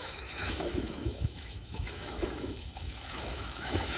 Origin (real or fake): fake